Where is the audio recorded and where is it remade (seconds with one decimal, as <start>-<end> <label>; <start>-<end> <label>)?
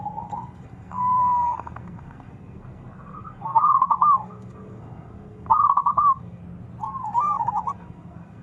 0.0-6.4 remade; 6.4-7.0 recorded; 7.0-8.4 remade